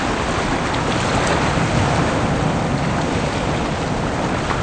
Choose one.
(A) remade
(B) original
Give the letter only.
B